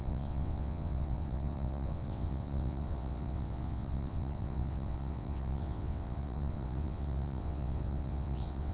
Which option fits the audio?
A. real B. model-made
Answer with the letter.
B